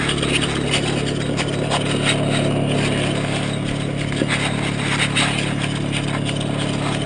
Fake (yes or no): no